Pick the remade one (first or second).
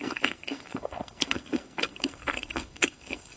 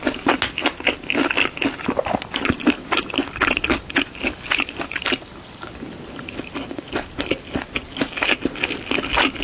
first